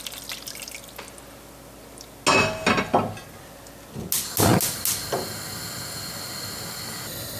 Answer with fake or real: real